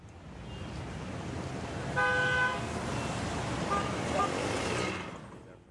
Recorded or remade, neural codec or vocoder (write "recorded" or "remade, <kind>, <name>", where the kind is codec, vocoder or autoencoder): recorded